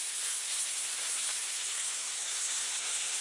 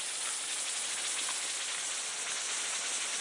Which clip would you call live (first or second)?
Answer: second